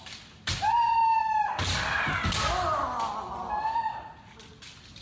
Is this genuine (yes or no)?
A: yes